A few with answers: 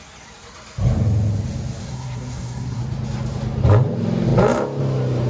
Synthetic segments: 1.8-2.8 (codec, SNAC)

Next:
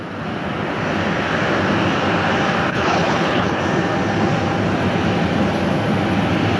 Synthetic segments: 2.7-3.6 (codec, HILCodec)

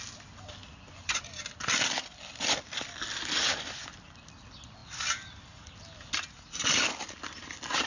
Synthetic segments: 0.7-1.2 (vocoder, Vocos)

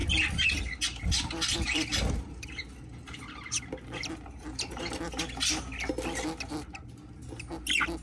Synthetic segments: 0.0-4.8 (vocoder, BigVGAN v2)

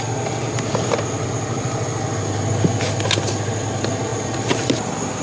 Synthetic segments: none

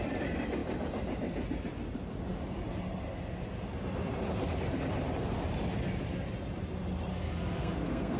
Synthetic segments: 7.1-8.2 (codec, SNAC)